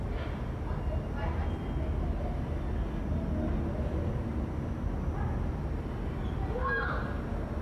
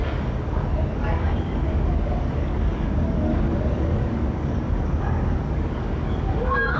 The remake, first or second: second